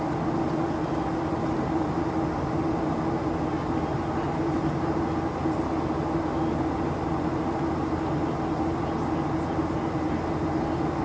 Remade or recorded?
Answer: recorded